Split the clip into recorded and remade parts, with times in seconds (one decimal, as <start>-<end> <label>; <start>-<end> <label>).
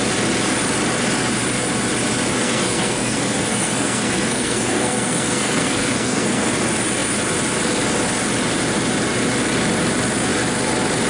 0.0-2.3 recorded; 2.3-6.5 remade; 6.5-11.1 recorded